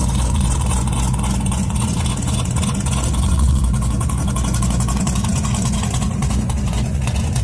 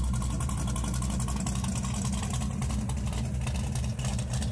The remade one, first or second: first